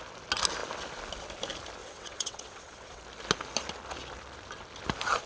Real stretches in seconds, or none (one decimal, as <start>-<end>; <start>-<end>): 0.0-1.8; 3.0-5.3